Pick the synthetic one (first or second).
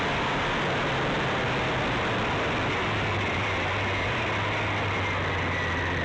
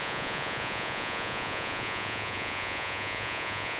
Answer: second